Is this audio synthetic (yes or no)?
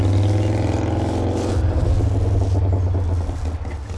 no